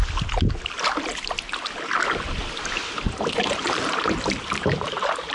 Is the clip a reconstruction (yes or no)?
no